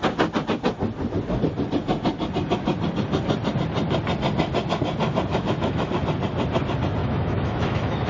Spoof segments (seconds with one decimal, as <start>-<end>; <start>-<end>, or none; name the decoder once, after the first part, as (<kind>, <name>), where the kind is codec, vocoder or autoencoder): 5.3-5.9 (autoencoder, DAC-VAE); 7.0-8.1